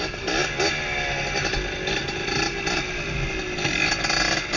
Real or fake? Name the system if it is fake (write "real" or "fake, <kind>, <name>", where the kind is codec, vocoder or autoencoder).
real